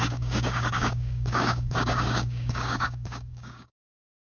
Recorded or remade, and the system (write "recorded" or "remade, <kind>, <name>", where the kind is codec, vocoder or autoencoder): remade, codec, DAC